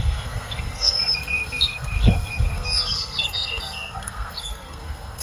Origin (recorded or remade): remade